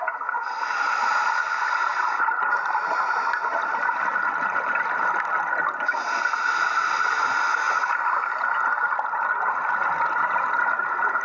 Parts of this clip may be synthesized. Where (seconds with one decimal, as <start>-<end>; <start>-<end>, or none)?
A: none